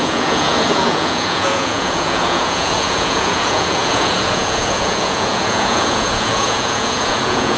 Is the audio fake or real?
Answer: fake